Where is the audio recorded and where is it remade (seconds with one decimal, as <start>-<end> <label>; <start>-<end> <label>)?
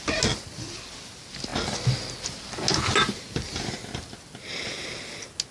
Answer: 0.0-5.5 recorded